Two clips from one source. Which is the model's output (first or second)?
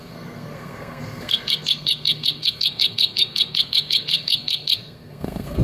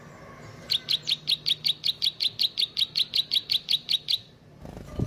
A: first